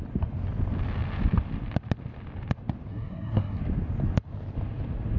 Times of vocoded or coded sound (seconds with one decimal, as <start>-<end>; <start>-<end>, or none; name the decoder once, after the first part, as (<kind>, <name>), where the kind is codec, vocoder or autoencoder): 2.9-3.6 (codec, SNAC)